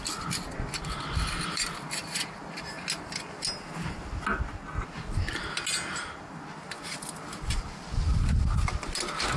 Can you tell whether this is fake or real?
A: real